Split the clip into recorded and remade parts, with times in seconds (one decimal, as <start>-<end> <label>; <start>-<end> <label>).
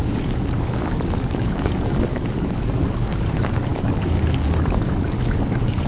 0.0-3.3 remade; 3.3-3.7 recorded; 3.7-5.9 remade